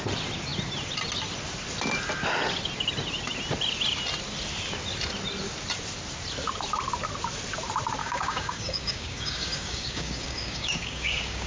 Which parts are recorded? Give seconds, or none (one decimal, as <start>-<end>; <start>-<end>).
0.0-8.0

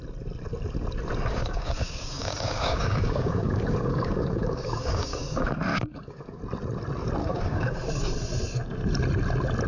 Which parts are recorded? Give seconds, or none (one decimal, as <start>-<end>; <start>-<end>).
0.0-1.3; 5.2-5.7; 6.4-7.2; 7.8-9.7

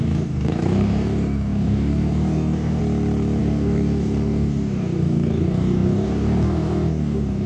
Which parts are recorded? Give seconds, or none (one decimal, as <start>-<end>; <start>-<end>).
2.8-3.4

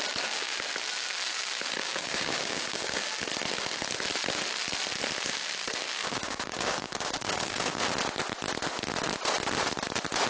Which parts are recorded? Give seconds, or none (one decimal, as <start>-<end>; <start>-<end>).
0.0-1.8; 3.0-6.0; 7.9-10.3